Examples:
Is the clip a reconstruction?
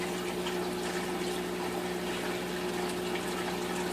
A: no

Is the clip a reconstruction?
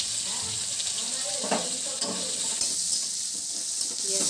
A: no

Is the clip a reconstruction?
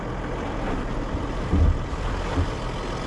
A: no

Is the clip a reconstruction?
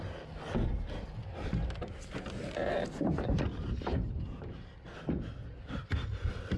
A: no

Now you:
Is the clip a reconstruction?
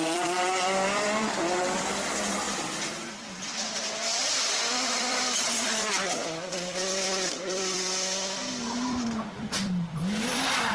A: yes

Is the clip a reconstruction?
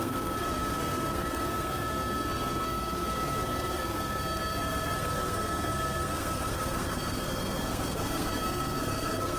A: yes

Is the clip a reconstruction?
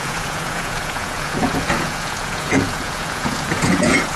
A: yes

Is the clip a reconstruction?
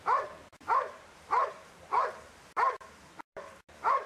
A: yes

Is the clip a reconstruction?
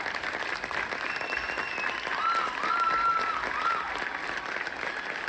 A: no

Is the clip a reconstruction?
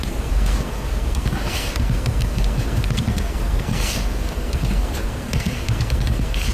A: yes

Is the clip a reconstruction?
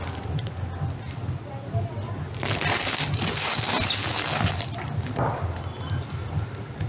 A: no